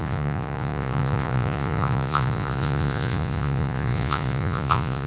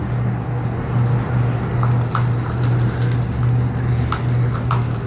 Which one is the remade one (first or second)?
first